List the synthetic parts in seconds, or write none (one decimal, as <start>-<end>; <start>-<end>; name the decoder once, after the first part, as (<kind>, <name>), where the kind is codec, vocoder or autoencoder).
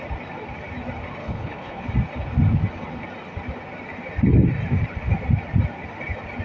1.2-1.9 (codec, HILCodec)